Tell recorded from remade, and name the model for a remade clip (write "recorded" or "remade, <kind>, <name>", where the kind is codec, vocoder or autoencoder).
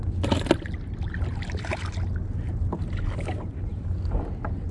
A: recorded